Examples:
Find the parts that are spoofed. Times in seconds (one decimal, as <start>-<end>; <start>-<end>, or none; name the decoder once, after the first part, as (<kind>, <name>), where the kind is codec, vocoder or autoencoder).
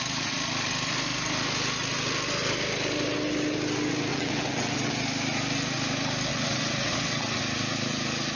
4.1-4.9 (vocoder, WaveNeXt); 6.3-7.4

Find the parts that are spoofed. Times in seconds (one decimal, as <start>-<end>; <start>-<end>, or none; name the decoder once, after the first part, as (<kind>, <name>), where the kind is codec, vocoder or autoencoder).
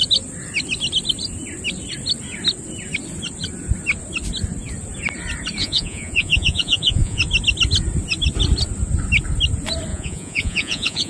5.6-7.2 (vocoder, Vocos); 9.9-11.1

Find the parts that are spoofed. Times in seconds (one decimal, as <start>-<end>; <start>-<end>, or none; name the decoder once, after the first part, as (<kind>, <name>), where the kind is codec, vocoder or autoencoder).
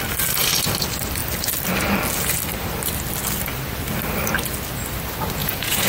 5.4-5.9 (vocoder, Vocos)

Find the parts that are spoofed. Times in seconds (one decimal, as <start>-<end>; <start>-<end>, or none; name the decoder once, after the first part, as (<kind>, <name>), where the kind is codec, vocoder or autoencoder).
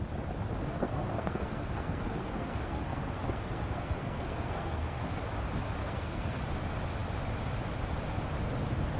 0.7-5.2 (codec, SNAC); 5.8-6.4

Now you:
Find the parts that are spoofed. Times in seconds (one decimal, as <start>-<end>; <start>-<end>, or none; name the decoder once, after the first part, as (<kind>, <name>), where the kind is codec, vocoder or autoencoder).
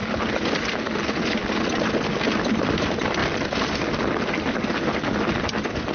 none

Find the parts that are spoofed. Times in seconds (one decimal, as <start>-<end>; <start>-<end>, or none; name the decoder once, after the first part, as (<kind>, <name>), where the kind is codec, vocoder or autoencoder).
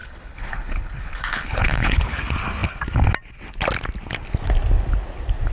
0.0-2.2 (codec, HILCodec)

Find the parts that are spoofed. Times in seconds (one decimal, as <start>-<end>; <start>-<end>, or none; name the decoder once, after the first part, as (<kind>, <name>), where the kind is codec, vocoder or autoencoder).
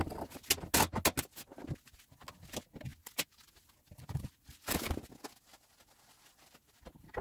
none